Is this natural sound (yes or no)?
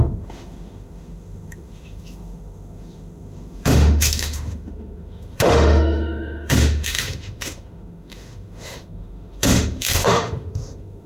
no